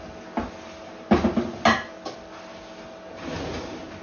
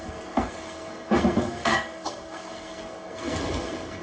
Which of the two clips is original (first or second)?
first